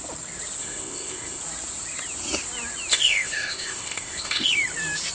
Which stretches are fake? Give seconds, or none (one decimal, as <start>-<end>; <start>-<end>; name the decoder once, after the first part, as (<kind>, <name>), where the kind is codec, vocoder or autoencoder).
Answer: 0.6-1.4 (codec, ZipCodec); 2.9-4.5